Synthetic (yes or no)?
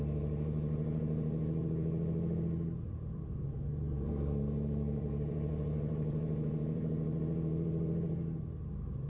yes